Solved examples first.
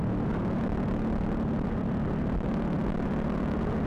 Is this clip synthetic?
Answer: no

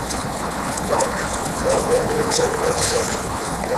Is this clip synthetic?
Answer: yes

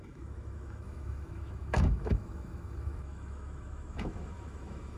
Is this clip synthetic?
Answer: yes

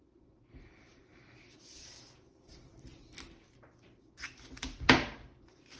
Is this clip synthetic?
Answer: no